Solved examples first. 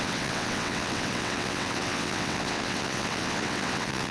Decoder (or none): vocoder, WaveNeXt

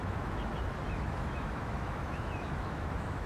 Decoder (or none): autoencoder, DAC-VAE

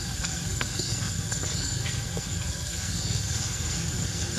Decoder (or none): codec, SNAC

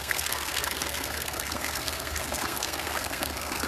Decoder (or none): codec, SNAC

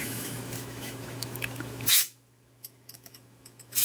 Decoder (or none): autoencoder, DAC-VAE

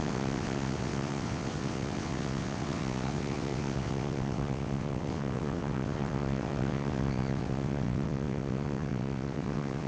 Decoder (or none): vocoder, WaveNeXt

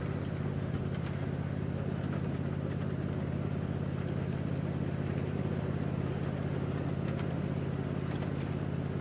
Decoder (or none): none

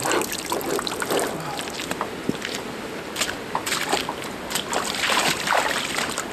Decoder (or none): none